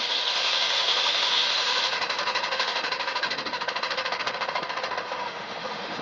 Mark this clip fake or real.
fake